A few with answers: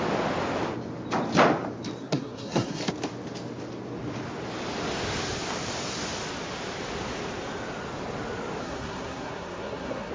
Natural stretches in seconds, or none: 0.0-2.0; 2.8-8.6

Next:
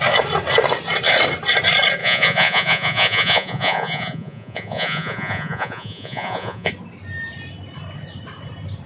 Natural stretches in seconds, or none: 0.0-2.0; 6.7-8.9

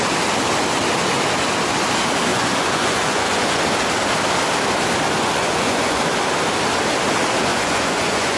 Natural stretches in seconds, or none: 0.0-2.3; 3.6-5.2; 6.0-7.5

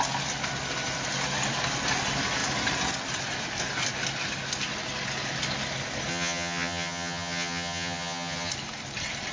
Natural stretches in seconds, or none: 0.0-6.1; 8.5-9.3